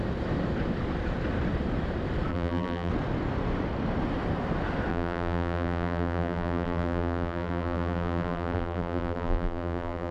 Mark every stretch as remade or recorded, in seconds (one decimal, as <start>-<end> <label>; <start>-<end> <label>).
0.0-2.3 recorded; 2.3-2.9 remade; 2.9-4.9 recorded; 4.9-10.1 remade